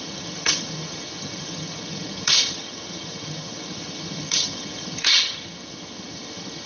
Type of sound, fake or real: fake